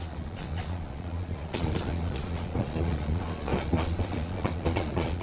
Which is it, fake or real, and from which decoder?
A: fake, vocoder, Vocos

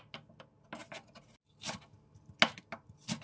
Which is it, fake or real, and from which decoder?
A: real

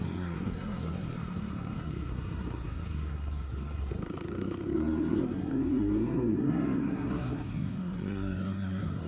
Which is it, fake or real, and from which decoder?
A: fake, codec, SNAC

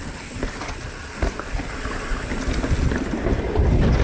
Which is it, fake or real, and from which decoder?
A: real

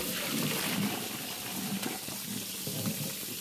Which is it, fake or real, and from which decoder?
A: real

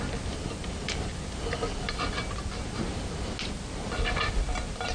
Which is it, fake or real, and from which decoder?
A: real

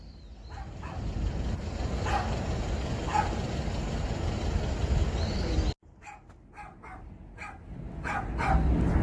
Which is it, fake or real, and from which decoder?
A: real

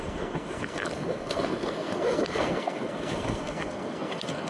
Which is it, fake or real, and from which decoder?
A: fake, codec, SNAC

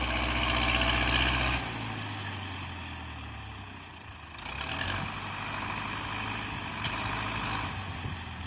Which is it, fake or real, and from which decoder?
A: real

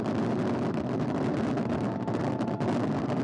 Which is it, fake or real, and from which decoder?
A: real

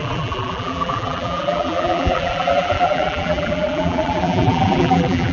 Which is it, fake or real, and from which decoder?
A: fake, vocoder, BigVGAN v2